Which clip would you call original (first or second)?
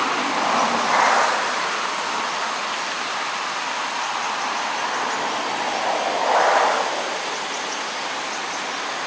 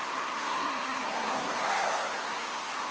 first